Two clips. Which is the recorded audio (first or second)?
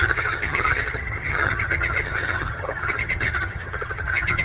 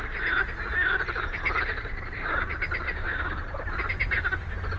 second